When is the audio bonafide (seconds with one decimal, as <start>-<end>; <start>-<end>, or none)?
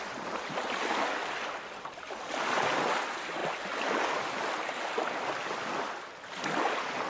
0.0-7.1